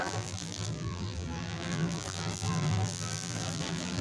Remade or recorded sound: remade